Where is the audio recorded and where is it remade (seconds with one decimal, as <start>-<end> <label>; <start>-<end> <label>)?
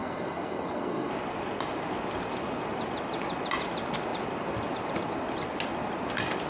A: 0.0-1.1 remade; 1.1-6.5 recorded